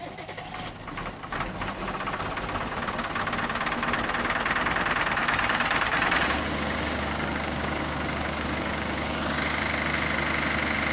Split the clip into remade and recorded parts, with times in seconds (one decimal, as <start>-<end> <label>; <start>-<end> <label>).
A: 0.0-5.2 recorded; 5.2-9.6 remade; 9.6-10.9 recorded